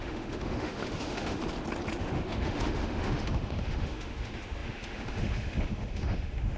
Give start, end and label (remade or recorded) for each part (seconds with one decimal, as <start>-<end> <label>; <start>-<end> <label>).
0.0-1.4 remade; 1.4-2.0 recorded; 2.0-6.6 remade